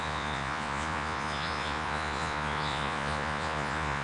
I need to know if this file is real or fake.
fake